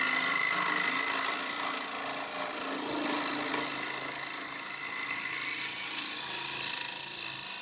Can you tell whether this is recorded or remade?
recorded